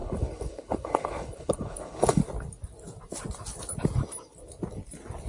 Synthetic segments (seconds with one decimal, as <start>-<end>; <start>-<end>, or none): 0.0-2.2